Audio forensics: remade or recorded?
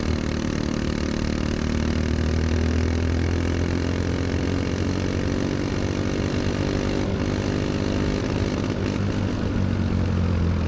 recorded